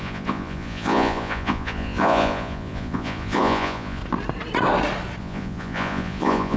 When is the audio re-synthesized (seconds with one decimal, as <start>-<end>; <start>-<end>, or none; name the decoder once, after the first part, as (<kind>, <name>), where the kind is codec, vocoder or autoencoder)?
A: 0.0-4.0 (vocoder, Vocos); 5.2-6.6